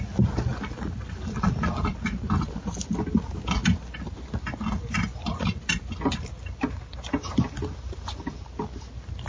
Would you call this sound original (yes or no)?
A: yes